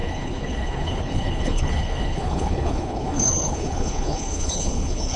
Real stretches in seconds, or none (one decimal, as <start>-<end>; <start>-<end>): none